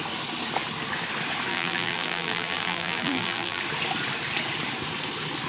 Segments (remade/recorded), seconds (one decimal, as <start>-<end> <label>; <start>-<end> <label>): 0.0-1.5 recorded; 1.5-3.6 remade; 3.6-5.5 recorded